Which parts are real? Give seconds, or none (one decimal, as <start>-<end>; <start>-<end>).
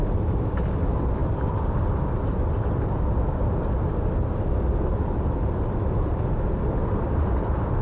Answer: 0.0-7.8